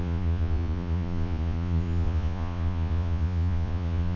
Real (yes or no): no